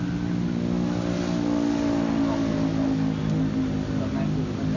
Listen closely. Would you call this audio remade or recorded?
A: recorded